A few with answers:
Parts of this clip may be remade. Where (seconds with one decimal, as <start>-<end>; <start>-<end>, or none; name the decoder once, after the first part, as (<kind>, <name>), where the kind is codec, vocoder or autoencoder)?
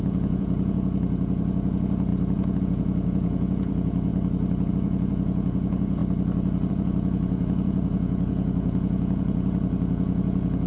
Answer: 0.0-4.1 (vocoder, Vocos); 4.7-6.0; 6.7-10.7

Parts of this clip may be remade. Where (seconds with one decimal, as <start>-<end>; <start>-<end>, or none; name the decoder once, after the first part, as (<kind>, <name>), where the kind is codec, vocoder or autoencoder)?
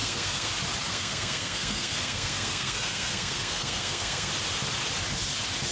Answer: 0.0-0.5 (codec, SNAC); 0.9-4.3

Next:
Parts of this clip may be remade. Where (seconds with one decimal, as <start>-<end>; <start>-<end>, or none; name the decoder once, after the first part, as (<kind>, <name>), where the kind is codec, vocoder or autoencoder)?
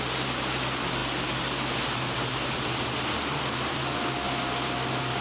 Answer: none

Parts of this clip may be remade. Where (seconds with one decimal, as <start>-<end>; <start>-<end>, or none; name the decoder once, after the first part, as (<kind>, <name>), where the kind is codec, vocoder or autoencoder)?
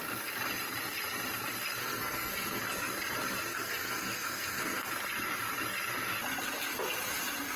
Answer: 1.8-2.6 (codec, SNAC); 3.5-4.9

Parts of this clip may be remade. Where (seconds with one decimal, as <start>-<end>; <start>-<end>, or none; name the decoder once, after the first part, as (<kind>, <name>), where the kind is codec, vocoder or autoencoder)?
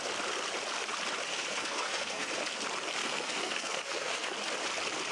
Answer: 1.3-2.3 (codec, SNAC); 3.0-4.3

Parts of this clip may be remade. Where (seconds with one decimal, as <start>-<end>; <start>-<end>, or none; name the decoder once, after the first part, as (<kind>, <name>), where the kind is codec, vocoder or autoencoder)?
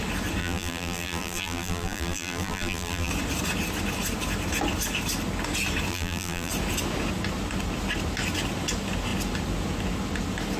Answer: 0.4-3.1 (vocoder, BigVGAN v2); 5.9-6.5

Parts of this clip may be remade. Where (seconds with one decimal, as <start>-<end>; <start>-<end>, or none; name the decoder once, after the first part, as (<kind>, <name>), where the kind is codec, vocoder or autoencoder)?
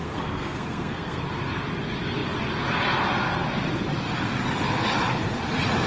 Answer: 0.0-1.2 (codec, SNAC)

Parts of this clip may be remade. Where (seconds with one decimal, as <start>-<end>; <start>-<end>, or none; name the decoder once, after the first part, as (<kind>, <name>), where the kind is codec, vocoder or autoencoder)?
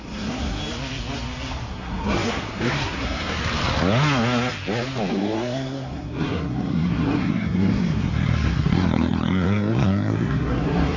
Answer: 0.0-0.6 (codec, SNAC); 1.7-3.4; 5.1-11.0